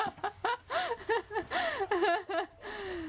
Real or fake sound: real